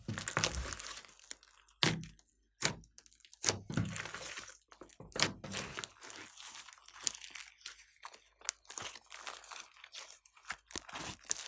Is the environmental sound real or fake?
real